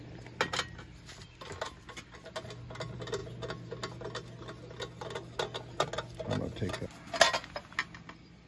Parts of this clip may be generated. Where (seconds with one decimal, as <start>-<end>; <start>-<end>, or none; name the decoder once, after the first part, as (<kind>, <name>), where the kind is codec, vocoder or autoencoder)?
none